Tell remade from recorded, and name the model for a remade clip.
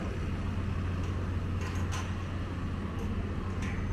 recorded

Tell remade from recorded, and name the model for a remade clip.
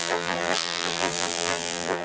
remade, vocoder, BigVGAN v2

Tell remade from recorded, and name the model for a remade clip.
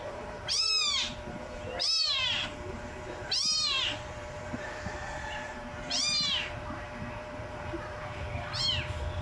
remade, vocoder, BigVGAN v2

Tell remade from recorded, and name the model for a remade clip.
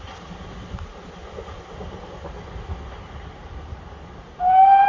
recorded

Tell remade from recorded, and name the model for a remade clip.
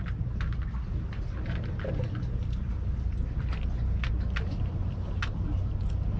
recorded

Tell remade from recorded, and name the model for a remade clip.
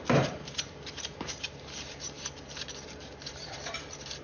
remade, vocoder, BigVGAN v2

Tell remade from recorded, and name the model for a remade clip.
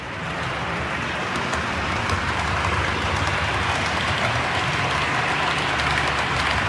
remade, vocoder, BigVGAN v2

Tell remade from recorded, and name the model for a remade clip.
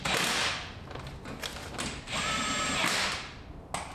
recorded